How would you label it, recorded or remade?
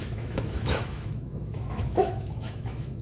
remade